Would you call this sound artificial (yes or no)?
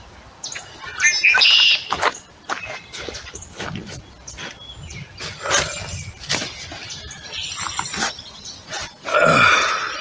no